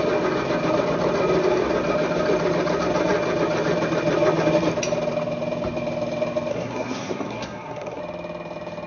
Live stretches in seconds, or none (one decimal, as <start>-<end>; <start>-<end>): 0.0-6.5; 8.0-8.9